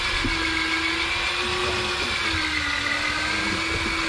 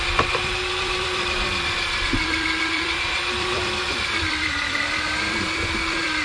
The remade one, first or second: second